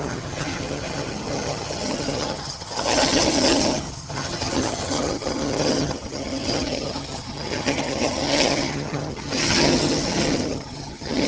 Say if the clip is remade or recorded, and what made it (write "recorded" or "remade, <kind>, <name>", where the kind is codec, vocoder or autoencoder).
remade, vocoder, HiFi-GAN